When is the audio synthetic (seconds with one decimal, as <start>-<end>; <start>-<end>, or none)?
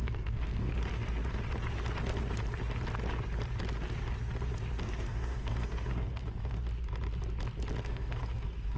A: 0.0-0.7; 4.8-6.6; 7.8-8.8